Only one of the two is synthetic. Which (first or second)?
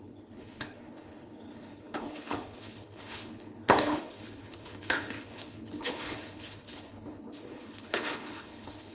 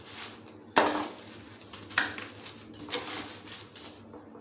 first